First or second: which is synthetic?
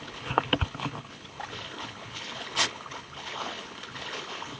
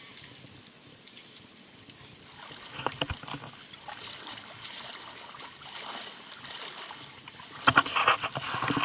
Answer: first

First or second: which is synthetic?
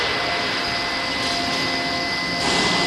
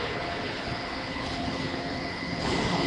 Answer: second